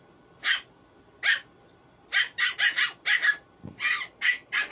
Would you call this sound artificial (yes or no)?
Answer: no